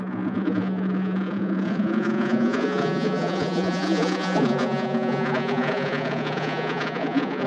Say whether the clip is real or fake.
fake